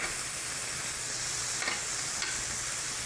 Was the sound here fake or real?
real